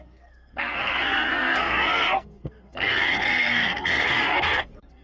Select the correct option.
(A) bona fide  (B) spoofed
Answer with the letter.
B